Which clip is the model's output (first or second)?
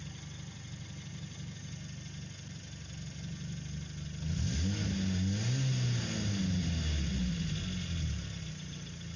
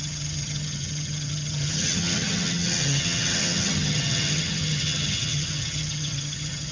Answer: second